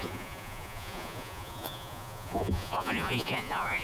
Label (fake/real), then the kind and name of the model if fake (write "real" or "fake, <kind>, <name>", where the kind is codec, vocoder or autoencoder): fake, vocoder, Vocos